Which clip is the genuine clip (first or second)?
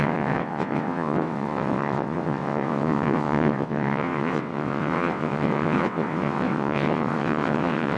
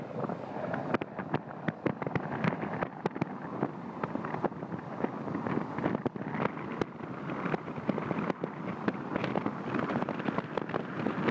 second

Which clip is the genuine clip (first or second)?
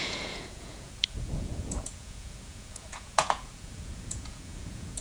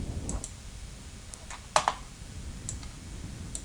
second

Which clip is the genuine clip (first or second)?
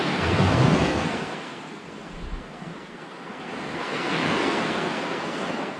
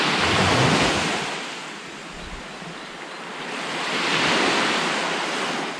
second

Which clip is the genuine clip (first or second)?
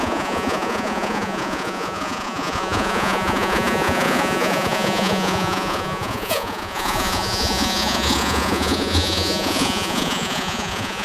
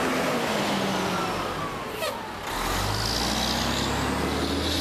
second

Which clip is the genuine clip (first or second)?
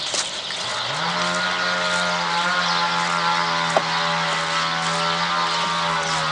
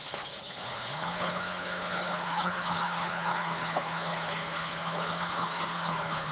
first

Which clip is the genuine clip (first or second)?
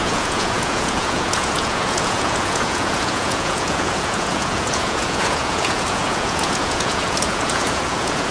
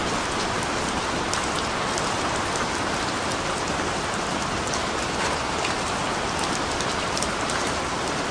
second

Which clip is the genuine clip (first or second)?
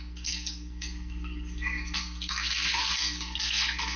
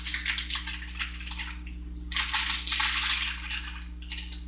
second